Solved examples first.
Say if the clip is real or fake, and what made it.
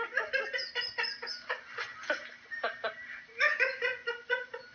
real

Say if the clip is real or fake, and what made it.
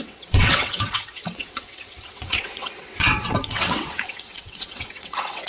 fake, vocoder, WaveNeXt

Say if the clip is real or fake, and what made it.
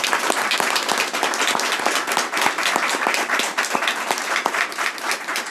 real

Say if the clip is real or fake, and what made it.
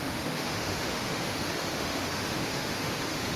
fake, autoencoder, DAC-VAE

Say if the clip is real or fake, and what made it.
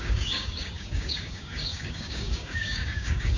fake, codec, DAC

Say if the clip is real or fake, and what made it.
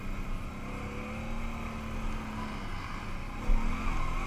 real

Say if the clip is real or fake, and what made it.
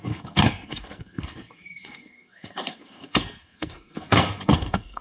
fake, codec, SNAC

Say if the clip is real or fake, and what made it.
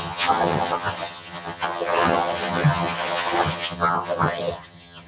fake, vocoder, HiFi-GAN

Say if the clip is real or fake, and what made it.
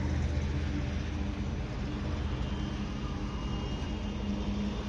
real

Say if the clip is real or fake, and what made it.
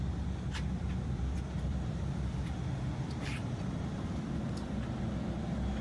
fake, vocoder, BigVGAN v2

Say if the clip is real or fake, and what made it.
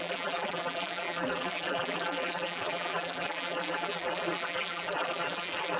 fake, vocoder, BigVGAN v2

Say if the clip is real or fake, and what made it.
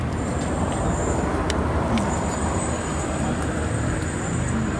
real